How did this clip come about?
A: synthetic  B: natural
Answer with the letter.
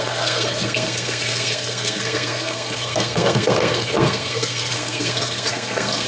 A